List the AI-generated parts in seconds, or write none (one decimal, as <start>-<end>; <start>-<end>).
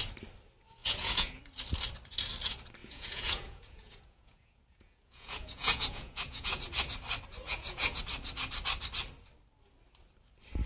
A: 0.8-1.4; 2.8-6.6; 7.5-8.0